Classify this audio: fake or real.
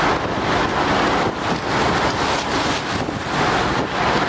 real